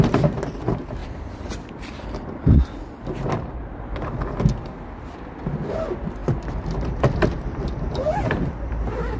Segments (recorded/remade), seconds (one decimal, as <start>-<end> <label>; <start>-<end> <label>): 0.0-1.0 recorded; 1.0-1.5 remade; 1.5-6.2 recorded; 6.2-8.7 remade; 8.7-9.2 recorded